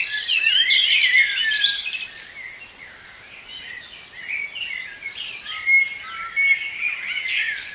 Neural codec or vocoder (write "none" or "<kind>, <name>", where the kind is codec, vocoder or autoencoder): none